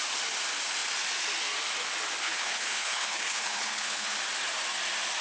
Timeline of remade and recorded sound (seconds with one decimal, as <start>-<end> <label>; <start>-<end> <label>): 0.0-2.2 recorded; 2.2-4.2 remade; 4.2-5.2 recorded